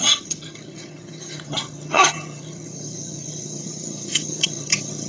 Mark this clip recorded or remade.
remade